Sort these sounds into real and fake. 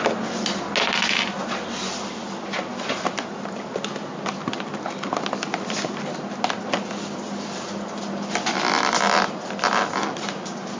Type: real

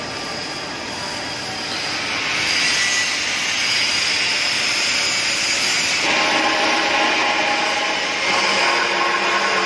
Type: real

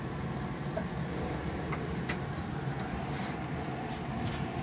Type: real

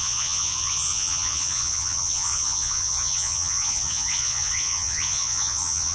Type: fake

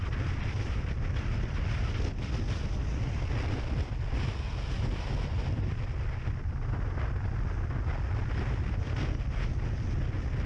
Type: real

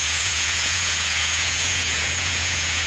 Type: fake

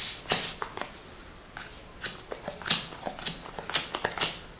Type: real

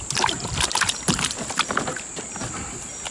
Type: real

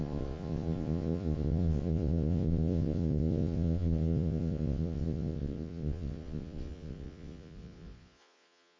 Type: fake